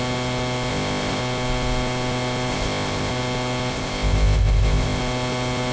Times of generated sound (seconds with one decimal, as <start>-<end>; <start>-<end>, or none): 0.7-1.2; 2.5-3.1; 3.7-5.0